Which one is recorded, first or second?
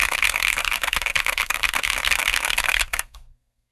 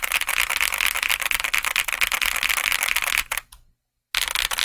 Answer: second